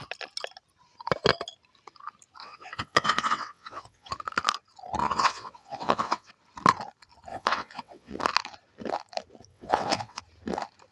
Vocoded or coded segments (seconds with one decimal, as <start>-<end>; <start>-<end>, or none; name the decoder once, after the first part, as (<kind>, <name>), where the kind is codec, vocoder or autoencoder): 2.4-4.1 (vocoder, WaveNeXt); 5.0-6.3; 7.3-8.2; 9.5-10.2